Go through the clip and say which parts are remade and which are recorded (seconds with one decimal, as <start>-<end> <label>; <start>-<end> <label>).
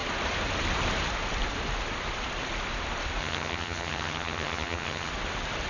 0.0-3.2 recorded; 3.2-5.1 remade; 5.1-5.7 recorded